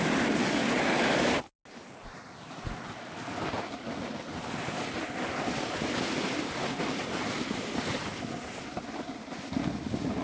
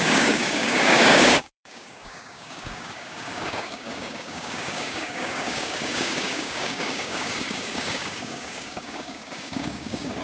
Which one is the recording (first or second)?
first